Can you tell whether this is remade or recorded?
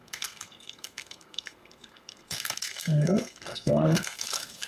remade